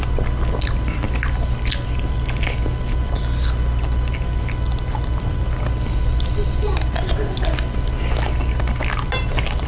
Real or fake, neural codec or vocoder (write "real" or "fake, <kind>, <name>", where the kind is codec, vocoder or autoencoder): real